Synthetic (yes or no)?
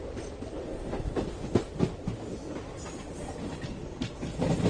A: no